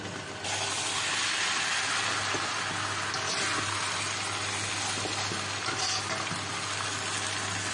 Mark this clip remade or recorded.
recorded